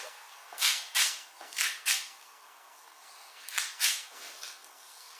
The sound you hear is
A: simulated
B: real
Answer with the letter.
A